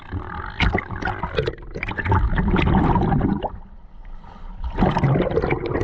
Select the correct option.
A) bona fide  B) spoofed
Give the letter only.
A